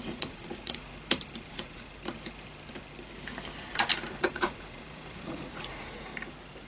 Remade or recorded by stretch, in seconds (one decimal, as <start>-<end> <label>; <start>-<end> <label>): 0.0-0.9 remade; 0.9-1.5 recorded; 1.5-1.9 remade; 1.9-4.3 recorded; 4.3-6.1 remade; 6.1-6.7 recorded